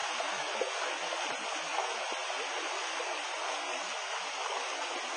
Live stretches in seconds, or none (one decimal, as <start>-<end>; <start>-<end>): 0.0-5.2